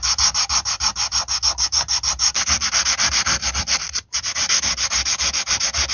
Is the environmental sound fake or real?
real